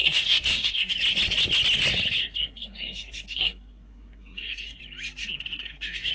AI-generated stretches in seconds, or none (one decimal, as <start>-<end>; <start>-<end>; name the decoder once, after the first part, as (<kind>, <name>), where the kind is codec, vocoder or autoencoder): 0.0-0.9 (codec, SNAC); 2.2-4.8; 5.2-6.1